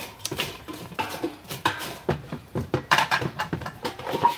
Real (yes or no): no